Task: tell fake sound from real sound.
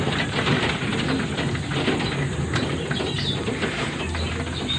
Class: real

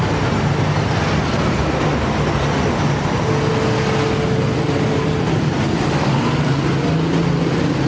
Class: real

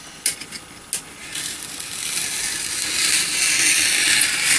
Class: real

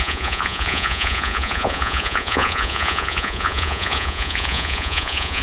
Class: fake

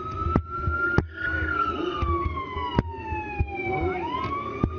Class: real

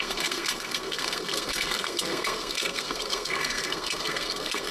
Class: fake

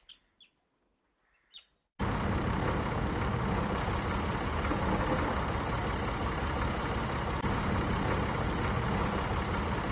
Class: real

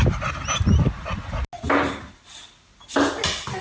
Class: real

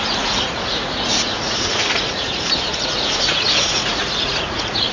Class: fake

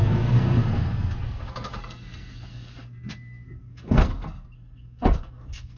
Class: fake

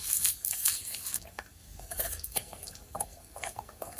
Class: fake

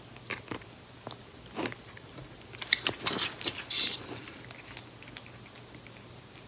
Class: real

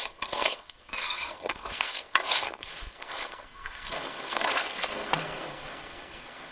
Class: fake